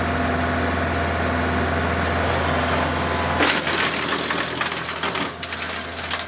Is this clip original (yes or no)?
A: yes